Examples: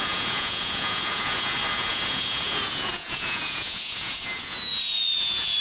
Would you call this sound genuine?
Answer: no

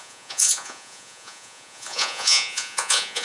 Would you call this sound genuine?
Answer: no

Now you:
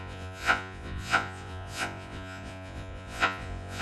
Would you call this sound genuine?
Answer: no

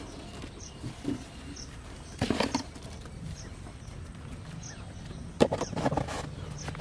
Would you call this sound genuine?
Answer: yes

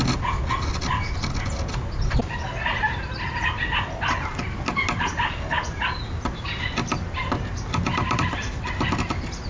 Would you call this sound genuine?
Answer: yes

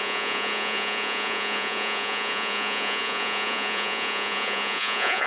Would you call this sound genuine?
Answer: no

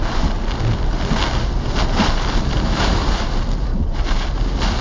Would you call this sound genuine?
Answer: yes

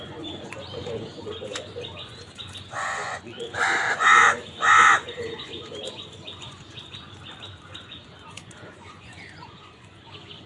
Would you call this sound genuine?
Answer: no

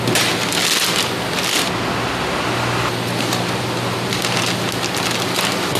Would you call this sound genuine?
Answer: yes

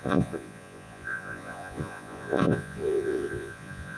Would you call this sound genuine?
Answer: no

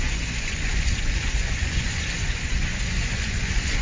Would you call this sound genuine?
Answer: no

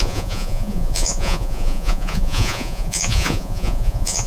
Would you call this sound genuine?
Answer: no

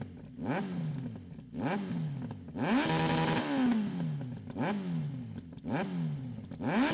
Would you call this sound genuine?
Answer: yes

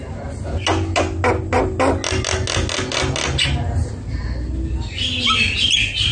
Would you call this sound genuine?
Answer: yes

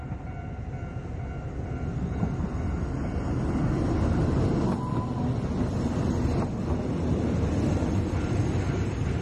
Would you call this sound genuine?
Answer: yes